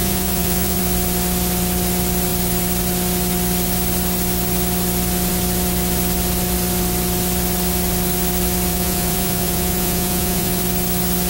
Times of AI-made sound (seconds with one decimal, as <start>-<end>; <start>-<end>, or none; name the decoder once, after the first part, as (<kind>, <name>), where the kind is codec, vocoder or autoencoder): 0.0-0.8 (vocoder, Vocos); 8.7-10.6

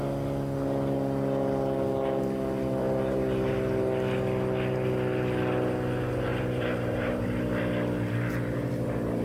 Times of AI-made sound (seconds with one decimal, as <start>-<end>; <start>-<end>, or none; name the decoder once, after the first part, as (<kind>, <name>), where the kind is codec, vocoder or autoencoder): 2.8-3.5 (vocoder, BigVGAN v2); 6.3-7.4

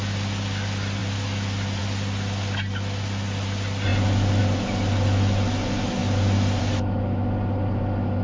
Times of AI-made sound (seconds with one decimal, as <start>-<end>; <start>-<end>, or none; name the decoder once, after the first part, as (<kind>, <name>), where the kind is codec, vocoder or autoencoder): none

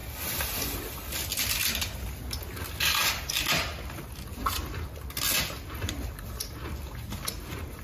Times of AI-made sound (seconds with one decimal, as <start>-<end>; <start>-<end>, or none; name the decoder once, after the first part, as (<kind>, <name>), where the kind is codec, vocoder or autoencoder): 5.8-6.3 (vocoder, BigVGAN v2)

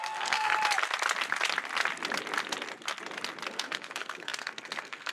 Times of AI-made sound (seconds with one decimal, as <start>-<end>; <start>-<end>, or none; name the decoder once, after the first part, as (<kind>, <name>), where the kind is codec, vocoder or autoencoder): 0.0-0.5 (codec, SNAC); 3.5-5.1